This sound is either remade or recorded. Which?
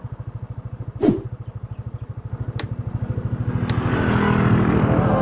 recorded